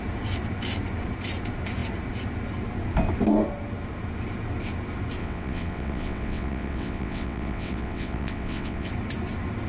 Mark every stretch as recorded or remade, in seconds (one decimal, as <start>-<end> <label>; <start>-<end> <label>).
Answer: 0.0-5.2 recorded; 5.2-8.9 remade; 8.9-9.7 recorded